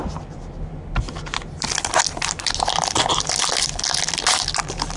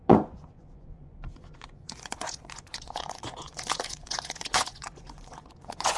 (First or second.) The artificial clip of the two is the second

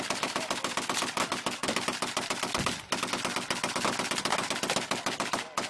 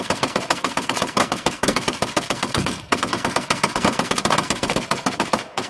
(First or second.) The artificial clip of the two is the second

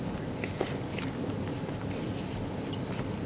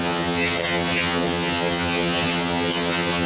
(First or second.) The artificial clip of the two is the second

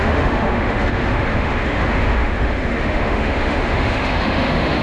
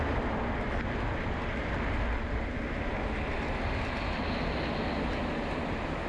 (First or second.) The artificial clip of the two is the first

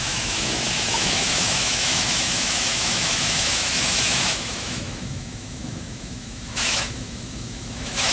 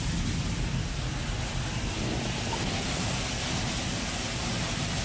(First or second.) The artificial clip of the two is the first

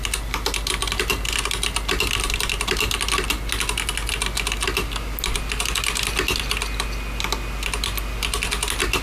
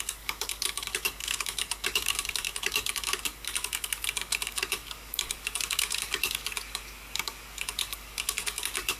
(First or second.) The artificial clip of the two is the second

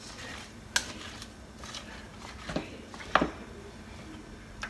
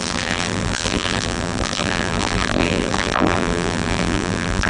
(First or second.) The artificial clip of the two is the second